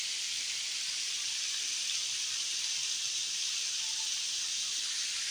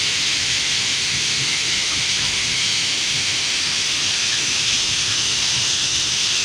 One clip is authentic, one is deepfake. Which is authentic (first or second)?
first